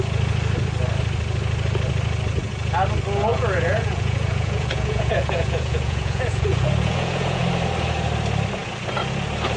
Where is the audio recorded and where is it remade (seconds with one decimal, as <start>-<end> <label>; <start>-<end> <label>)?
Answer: 0.0-3.3 recorded; 3.3-7.4 remade; 7.4-9.6 recorded